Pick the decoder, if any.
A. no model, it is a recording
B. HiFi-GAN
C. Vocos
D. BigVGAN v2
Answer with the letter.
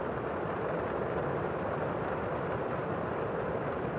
D